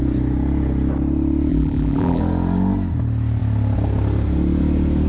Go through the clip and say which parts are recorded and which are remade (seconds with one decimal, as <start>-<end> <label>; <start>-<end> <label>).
0.0-1.5 recorded; 1.5-2.2 remade; 2.2-5.1 recorded